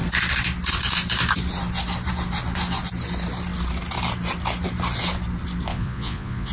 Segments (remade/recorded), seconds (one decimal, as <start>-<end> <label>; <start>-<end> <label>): 0.0-5.7 recorded; 5.7-6.5 remade

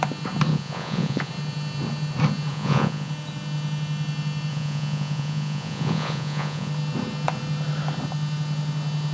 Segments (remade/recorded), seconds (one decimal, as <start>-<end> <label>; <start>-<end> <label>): 0.0-0.5 recorded; 0.5-1.3 remade; 1.3-2.5 recorded; 2.5-3.1 remade; 3.1-4.5 recorded; 4.5-6.7 remade; 6.7-9.1 recorded

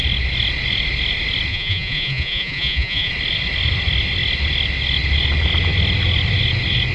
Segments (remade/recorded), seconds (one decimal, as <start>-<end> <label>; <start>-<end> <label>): 0.0-1.5 recorded; 1.5-3.1 remade; 3.1-6.9 recorded